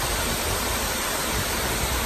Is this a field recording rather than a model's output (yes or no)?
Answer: yes